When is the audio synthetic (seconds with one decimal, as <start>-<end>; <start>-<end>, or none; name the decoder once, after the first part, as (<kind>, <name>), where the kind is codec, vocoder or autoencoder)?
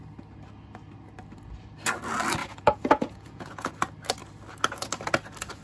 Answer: 2.4-3.7 (vocoder, Vocos)